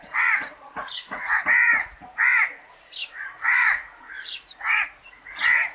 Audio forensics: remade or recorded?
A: remade